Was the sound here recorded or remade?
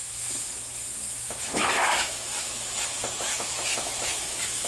remade